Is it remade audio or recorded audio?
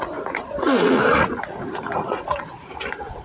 remade